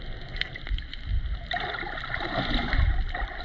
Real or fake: real